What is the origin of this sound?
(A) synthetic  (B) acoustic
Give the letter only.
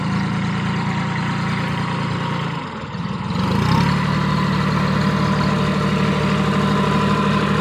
B